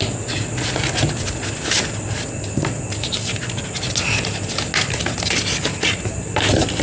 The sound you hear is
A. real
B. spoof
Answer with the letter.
A